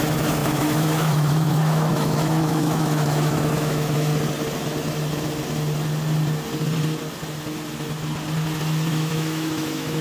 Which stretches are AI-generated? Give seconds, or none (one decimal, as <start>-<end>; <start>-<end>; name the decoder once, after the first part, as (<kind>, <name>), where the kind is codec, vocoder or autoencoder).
0.0-4.1 (autoencoder, DAC-VAE); 8.9-10.0